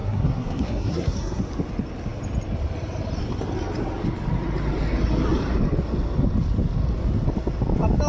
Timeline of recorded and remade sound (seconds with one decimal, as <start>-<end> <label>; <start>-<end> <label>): 0.0-1.4 remade; 1.4-8.1 recorded